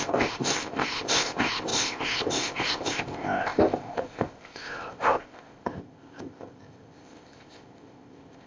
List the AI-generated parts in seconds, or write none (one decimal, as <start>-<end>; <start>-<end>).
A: 0.0-8.5